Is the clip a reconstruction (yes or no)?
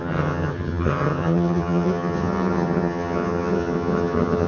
yes